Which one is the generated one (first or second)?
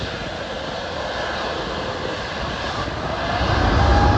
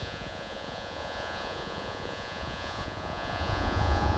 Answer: second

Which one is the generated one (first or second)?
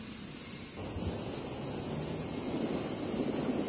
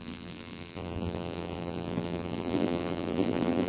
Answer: second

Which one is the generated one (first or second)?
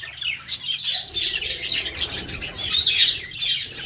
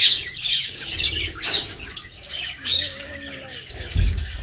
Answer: second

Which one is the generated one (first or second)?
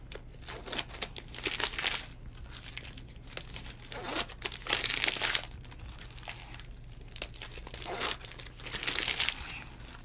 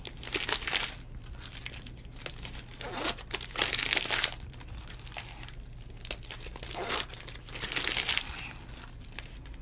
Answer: second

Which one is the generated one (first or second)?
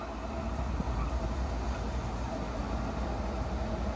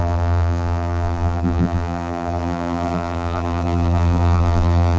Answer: second